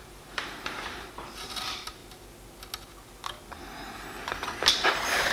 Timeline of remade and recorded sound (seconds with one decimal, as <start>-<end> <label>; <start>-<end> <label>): 0.0-2.0 remade; 2.0-4.7 recorded; 4.7-5.3 remade